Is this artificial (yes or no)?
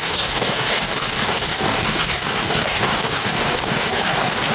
yes